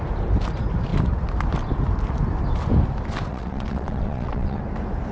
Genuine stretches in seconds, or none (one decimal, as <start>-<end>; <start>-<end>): 0.0-3.3; 4.6-5.1